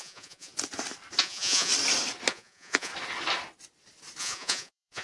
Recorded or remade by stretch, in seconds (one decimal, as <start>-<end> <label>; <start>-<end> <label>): 0.0-0.5 remade; 0.5-1.2 recorded; 1.2-1.7 remade; 1.7-2.3 recorded; 2.3-2.9 remade; 2.9-4.2 recorded; 4.2-5.0 remade